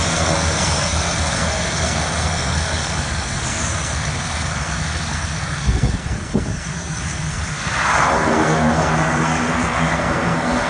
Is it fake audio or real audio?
fake